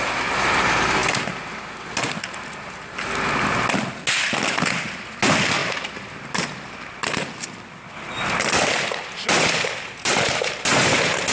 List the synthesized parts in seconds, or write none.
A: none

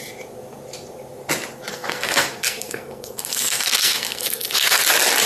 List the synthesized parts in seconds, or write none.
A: 1.7-4.8 (codec, SNAC)

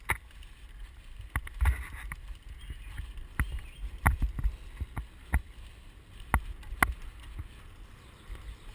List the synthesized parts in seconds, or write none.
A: none

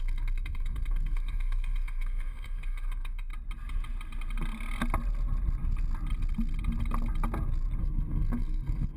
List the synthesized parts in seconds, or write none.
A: 0.0-3.3 (codec, SNAC); 7.8-9.0

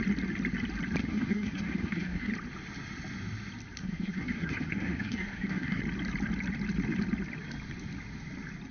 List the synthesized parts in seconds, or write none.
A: 1.0-2.3 (codec, SNAC); 3.8-5.8